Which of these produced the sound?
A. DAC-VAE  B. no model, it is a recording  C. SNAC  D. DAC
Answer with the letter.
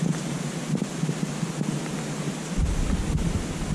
B